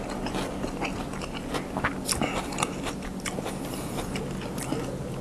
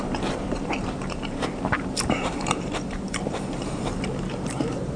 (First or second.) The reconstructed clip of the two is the second